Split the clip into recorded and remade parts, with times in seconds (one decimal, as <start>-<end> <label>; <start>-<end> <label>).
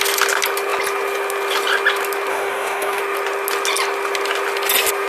0.0-2.3 recorded; 2.3-3.0 remade; 3.0-5.1 recorded